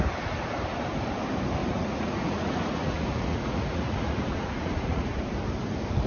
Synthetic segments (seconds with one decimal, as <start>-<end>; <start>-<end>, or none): 1.6-5.3